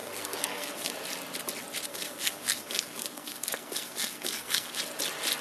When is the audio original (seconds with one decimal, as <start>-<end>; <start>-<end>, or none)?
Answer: 0.9-1.9; 4.8-5.4